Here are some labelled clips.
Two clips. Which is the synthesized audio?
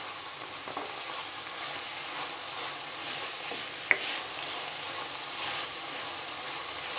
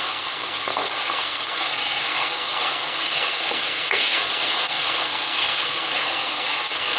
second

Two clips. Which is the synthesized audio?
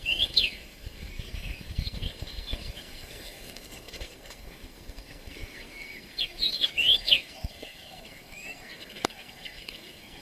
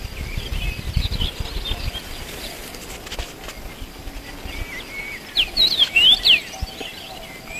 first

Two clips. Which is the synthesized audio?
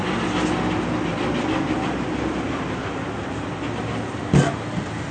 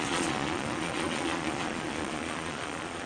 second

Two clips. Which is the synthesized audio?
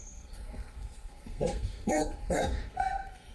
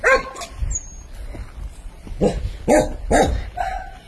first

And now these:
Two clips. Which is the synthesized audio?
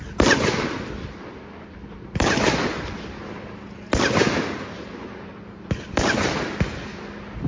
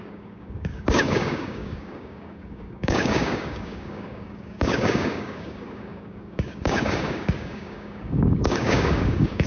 second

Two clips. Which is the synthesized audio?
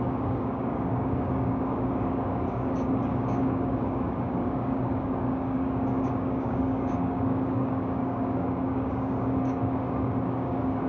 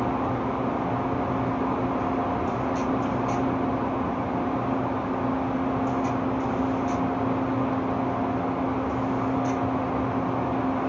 first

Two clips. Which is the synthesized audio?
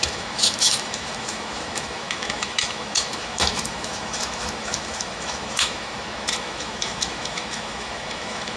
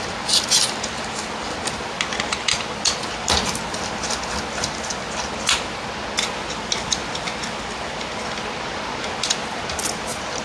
first